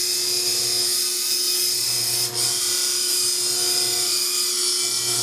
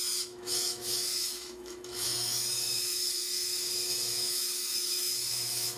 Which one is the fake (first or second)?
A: second